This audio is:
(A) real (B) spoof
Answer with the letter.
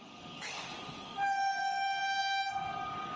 B